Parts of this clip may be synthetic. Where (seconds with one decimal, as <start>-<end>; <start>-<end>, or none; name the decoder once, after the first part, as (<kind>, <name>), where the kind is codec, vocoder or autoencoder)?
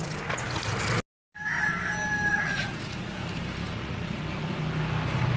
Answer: 2.3-3.2 (vocoder, Vocos); 3.6-4.2